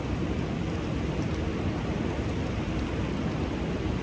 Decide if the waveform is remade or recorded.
recorded